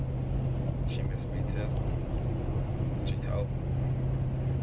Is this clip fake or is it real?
real